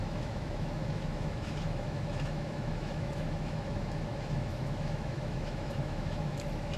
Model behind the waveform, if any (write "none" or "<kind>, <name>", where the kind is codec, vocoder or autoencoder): autoencoder, DAC-VAE